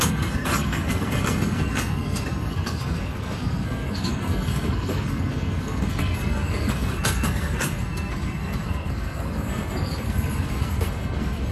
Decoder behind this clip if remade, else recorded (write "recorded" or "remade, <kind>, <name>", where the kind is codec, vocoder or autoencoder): remade, codec, SNAC